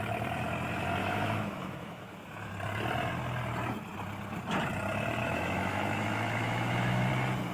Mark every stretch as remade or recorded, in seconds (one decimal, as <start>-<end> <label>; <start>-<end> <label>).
0.0-1.0 recorded; 1.0-2.5 remade; 2.5-5.2 recorded; 5.2-7.1 remade; 7.1-7.5 recorded